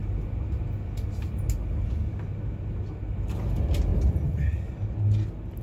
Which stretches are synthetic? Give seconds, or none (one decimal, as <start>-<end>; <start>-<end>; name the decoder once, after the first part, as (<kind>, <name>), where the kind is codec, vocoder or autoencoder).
none

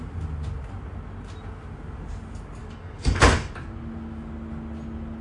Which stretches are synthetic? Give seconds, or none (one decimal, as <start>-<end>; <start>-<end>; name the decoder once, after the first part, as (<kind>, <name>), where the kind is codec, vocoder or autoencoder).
2.6-3.5 (codec, DAC)